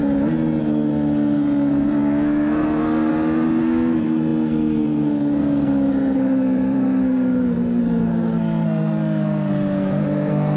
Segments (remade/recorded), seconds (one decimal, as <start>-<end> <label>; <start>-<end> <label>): 0.0-0.6 recorded; 0.6-3.1 remade; 3.1-3.6 recorded; 3.6-10.6 remade